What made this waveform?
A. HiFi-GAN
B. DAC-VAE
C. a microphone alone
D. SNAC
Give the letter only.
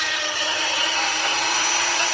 A